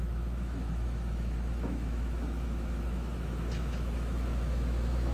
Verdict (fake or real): fake